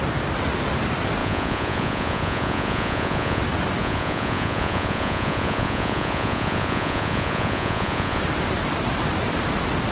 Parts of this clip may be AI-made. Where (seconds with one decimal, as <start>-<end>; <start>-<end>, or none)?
1.2-3.4; 3.8-8.2